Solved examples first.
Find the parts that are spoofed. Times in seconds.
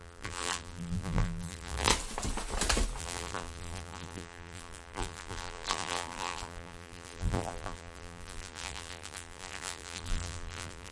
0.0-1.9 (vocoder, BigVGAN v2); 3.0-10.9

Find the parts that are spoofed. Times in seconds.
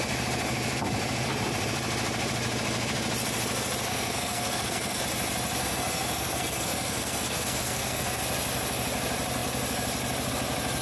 3.9-5.0 (codec, SNAC); 5.6-8.2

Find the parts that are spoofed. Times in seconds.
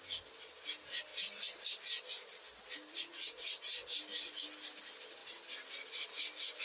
none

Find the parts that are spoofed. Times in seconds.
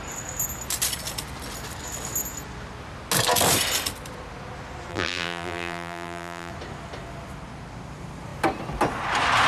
4.9-6.5 (vocoder, BigVGAN v2)